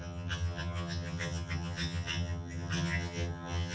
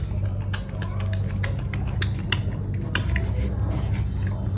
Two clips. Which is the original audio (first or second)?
second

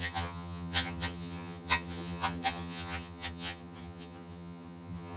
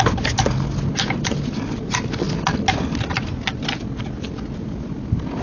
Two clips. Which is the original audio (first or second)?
second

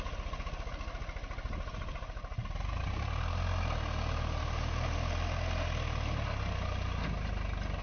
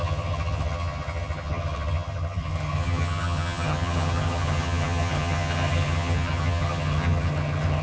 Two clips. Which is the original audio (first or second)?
first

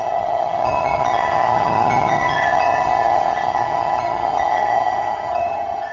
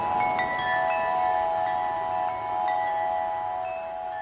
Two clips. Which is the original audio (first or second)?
second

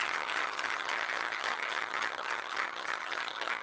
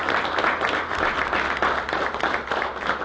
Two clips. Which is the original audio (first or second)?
second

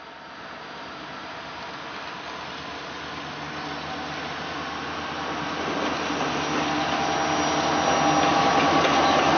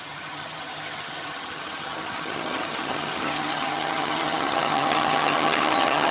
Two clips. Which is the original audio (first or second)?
first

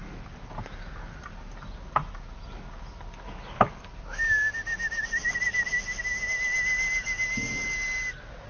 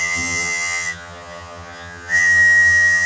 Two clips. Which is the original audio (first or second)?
first